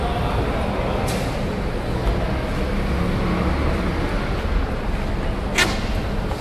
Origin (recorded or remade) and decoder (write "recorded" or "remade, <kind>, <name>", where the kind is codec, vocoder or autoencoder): recorded